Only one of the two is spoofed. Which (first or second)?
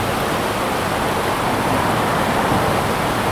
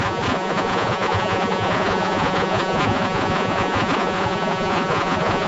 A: second